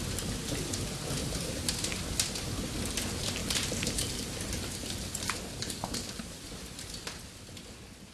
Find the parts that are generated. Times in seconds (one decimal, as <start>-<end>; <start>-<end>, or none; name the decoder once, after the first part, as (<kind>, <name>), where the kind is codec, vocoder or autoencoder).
1.2-1.7 (vocoder, BigVGAN v2); 3.4-6.9